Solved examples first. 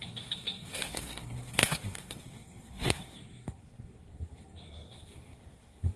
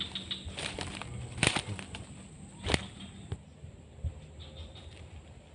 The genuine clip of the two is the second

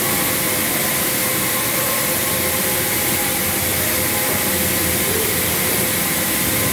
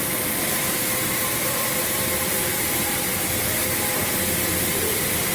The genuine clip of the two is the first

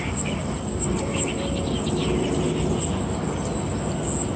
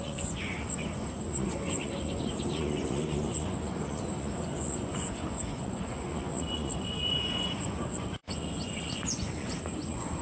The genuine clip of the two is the first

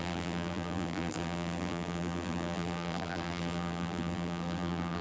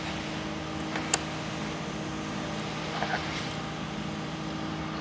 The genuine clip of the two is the second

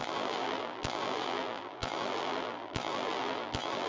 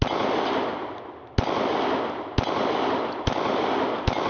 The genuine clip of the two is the second